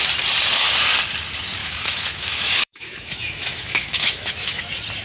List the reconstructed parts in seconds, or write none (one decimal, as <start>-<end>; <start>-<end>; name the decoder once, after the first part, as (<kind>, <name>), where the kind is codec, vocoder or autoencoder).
1.6-4.6 (autoencoder, DAC-VAE)